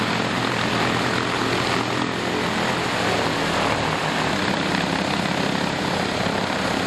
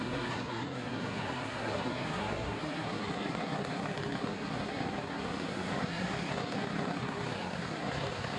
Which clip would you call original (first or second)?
first